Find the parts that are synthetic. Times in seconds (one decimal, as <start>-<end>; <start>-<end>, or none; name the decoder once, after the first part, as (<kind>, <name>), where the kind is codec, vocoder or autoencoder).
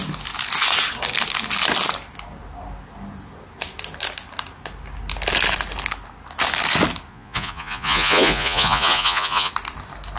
7.1-9.5 (vocoder, Vocos)